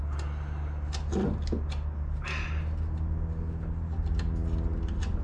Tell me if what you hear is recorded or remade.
recorded